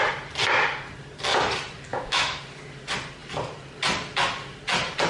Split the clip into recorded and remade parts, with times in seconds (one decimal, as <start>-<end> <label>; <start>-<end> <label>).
0.0-1.9 recorded; 1.9-2.4 remade; 2.4-5.1 recorded